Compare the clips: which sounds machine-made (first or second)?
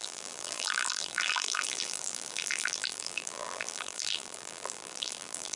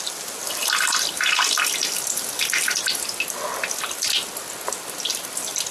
first